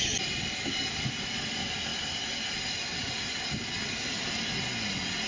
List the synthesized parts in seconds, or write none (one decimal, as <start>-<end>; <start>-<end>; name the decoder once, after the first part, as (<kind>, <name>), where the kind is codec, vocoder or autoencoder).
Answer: 0.0-1.9 (vocoder, BigVGAN v2)